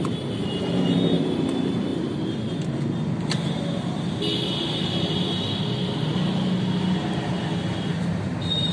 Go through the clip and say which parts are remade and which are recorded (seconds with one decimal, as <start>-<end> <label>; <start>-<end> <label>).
0.0-8.7 recorded